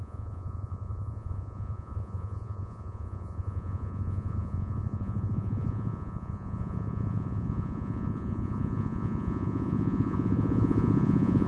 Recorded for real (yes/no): no